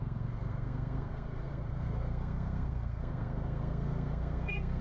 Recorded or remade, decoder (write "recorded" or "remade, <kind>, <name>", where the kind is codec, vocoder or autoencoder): remade, codec, SNAC